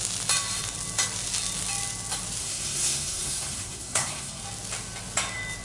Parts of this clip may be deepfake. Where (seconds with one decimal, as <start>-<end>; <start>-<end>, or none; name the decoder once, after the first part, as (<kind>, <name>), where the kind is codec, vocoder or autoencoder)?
2.4-4.4 (codec, SNAC)